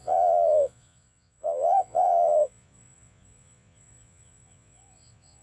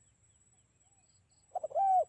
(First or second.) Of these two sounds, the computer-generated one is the first